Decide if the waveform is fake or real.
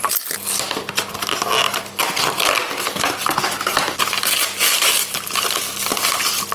real